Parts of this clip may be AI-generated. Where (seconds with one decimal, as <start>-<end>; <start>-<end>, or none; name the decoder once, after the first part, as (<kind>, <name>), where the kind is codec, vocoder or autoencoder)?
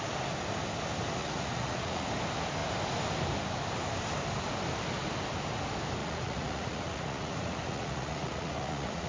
1.2-2.1 (vocoder, Vocos); 6.0-9.1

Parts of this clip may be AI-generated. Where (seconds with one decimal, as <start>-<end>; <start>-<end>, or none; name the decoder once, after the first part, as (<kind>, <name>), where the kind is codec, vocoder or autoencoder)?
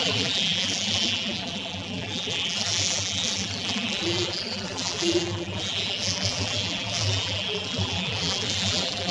0.0-9.1 (vocoder, BigVGAN v2)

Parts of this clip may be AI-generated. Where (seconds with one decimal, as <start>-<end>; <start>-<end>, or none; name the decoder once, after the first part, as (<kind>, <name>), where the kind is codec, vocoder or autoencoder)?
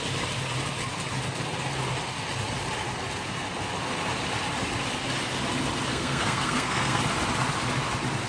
5.9-7.0 (codec, SNAC)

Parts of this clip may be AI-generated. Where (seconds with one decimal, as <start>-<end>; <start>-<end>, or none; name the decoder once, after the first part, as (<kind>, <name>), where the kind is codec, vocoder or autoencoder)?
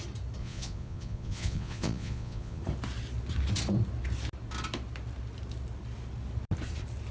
0.4-2.6 (vocoder, Vocos)